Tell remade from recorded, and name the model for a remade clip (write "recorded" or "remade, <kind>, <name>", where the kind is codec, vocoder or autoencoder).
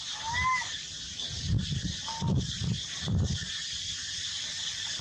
recorded